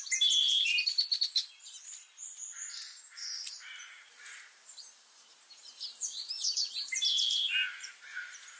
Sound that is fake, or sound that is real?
fake